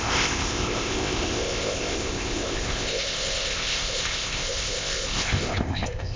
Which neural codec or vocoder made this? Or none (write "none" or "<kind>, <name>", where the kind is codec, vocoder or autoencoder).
codec, ZipCodec